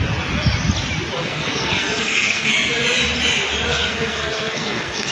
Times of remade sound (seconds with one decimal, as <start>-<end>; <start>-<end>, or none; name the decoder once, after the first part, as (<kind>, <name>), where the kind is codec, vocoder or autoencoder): 1.2-2.5 (codec, SNAC); 3.7-5.1